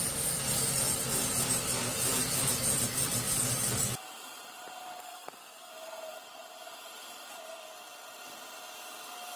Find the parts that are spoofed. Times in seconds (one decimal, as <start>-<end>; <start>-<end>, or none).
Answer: 5.0-5.7